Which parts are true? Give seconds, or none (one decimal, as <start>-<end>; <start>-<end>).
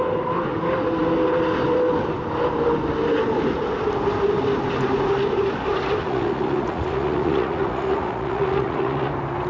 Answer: 0.0-6.0; 9.1-9.5